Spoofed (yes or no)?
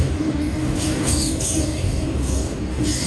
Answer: yes